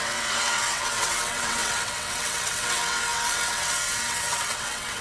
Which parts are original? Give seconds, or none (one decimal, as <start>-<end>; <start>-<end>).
none